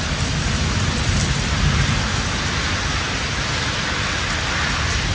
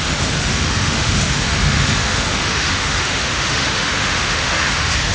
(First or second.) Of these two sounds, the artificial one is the second